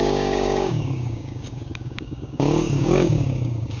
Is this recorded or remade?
remade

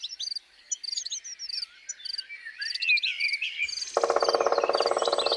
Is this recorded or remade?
recorded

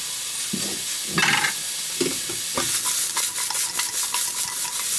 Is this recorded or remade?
recorded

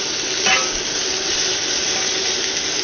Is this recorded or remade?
recorded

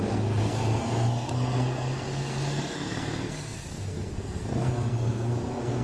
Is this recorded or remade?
remade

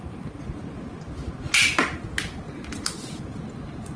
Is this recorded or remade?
recorded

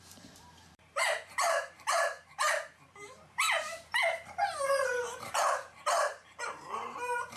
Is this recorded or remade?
remade